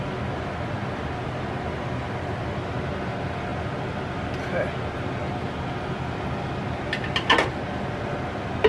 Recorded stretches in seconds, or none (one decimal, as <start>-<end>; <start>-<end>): 0.0-8.7